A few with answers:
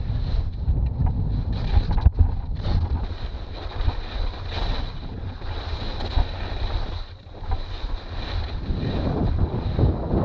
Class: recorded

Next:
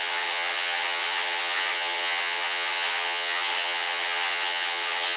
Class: remade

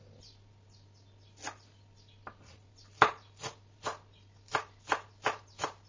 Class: recorded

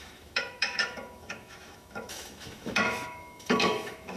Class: remade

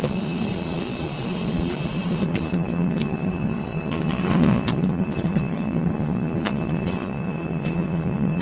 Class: remade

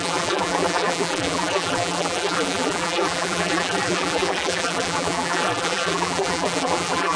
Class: remade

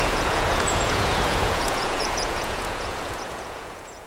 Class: remade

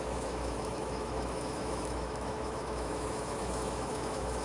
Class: remade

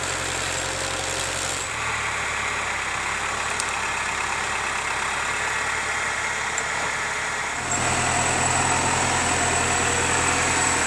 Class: recorded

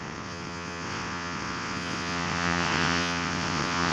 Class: remade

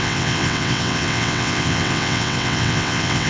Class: remade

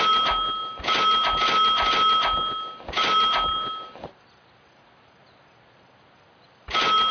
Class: recorded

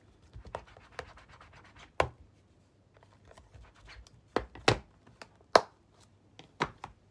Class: recorded